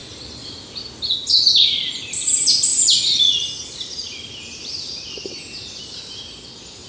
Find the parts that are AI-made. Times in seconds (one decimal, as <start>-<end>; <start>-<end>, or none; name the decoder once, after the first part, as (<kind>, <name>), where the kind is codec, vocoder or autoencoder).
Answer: none